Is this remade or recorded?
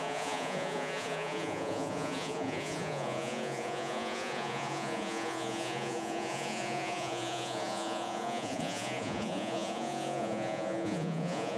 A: remade